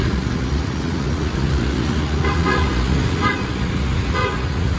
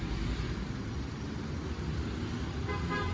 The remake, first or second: first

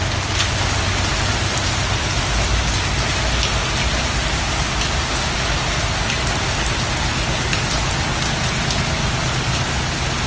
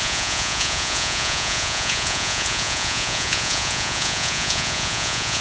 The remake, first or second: second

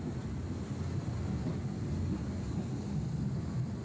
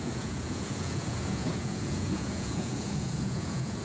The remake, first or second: second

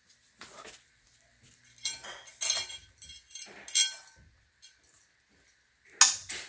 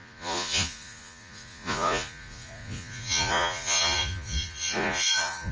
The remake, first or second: second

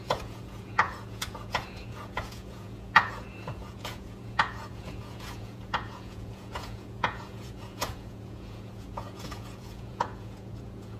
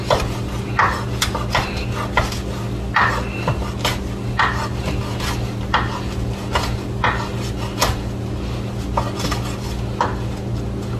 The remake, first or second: first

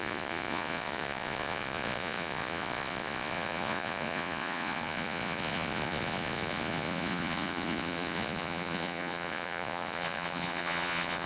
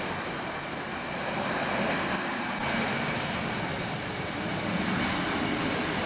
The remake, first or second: first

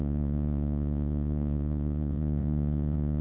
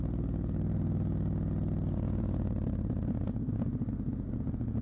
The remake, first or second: first